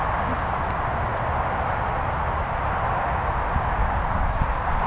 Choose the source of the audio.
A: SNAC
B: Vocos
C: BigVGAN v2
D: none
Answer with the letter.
D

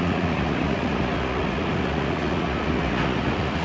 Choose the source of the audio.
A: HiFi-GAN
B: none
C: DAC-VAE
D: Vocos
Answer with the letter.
D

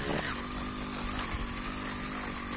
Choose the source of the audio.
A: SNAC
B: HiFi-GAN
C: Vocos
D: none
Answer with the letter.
D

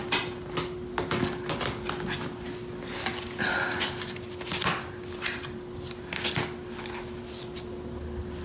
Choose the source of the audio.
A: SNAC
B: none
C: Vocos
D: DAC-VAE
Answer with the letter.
B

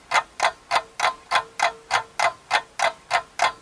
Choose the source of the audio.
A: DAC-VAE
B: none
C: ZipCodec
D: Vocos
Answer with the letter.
B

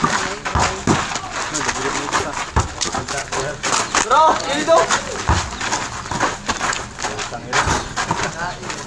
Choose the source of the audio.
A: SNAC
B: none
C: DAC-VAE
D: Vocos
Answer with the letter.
B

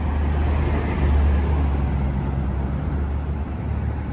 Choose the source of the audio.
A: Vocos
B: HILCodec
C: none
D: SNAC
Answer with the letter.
C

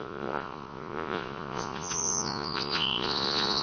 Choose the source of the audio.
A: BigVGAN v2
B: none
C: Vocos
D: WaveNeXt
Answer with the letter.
C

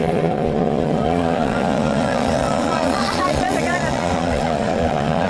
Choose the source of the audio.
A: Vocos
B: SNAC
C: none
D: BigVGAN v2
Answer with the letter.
A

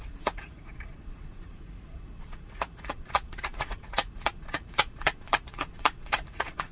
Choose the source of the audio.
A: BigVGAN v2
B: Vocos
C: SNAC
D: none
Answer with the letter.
B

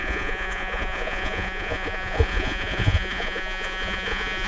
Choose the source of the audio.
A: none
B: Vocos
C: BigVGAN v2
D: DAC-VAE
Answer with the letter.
B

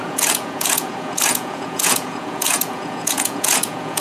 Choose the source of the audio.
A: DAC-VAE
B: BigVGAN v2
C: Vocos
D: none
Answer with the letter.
C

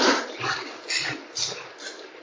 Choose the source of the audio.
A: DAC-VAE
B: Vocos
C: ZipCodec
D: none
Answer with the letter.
D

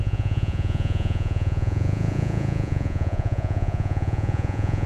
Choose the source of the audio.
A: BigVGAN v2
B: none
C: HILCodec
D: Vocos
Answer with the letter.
D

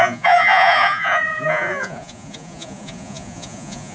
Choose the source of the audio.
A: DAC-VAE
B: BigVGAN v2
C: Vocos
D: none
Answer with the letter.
C